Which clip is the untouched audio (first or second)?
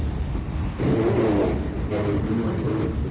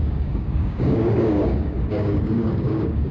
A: first